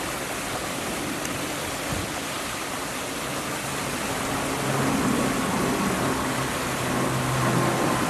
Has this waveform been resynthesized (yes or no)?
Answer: no